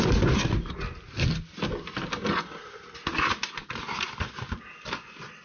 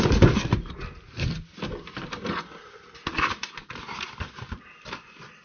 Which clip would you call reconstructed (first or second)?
second